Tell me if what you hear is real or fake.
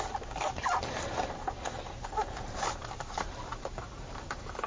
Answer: fake